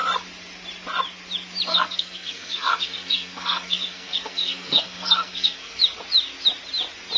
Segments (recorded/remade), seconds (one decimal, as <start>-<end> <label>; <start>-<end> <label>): 0.0-1.7 recorded; 1.7-5.8 remade; 5.8-7.2 recorded